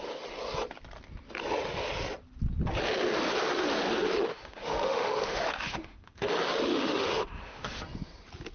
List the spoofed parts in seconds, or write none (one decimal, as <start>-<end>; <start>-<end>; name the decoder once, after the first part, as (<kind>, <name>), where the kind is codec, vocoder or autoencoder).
4.3-6.3 (autoencoder, DAC-VAE); 6.7-7.8